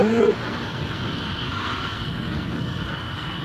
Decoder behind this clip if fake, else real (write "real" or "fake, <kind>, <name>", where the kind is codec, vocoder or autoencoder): fake, codec, SNAC